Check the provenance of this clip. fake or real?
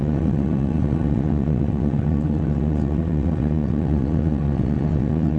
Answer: fake